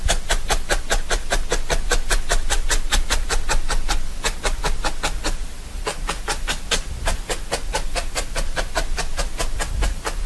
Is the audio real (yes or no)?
yes